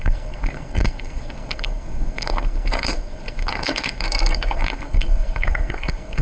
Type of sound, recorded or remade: remade